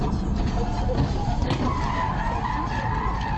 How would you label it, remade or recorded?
recorded